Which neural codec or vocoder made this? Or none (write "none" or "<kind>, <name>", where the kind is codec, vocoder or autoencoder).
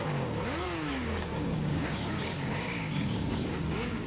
codec, DAC